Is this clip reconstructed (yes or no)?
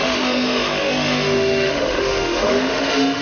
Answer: yes